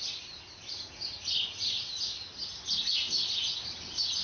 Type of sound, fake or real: real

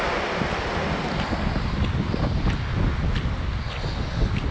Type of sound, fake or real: real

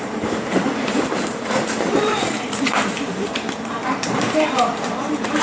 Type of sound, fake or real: fake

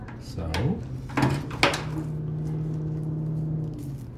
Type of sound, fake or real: real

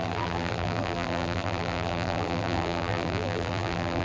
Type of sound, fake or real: fake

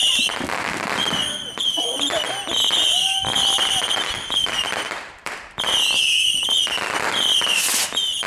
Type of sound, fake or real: fake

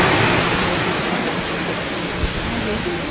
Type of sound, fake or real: real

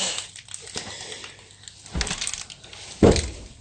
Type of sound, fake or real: real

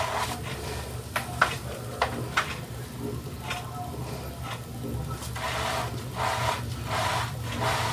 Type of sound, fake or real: real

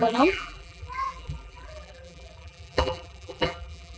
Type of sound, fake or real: fake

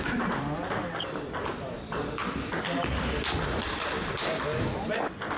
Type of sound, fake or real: real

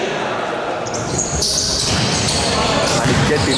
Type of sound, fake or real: fake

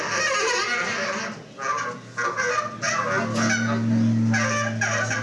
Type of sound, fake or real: real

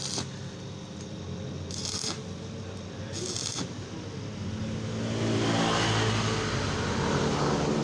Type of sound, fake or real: real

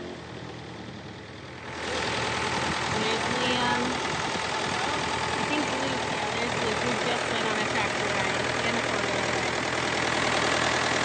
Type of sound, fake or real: real